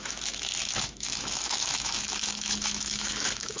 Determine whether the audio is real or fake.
fake